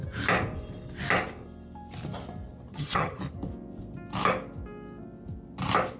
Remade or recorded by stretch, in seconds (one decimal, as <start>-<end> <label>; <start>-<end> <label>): 0.0-2.7 recorded; 2.7-3.2 remade; 3.2-6.0 recorded